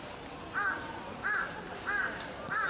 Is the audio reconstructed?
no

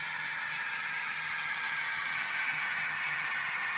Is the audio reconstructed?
yes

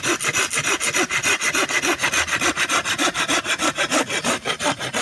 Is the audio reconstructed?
no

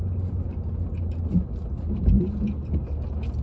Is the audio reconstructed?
no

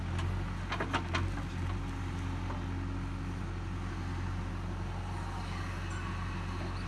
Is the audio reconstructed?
no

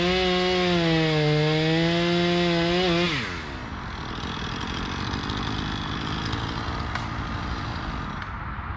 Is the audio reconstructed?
no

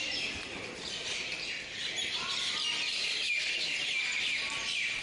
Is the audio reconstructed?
no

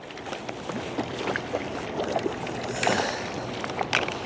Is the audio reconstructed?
no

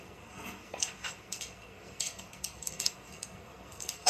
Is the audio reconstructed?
yes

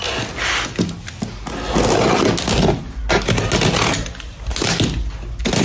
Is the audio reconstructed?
no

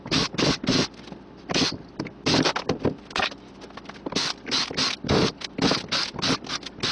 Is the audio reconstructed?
no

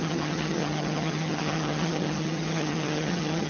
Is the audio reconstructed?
yes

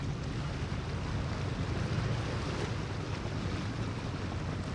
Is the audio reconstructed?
no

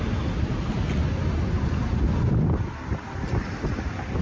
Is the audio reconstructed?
no